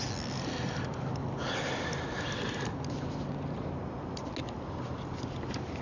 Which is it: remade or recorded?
recorded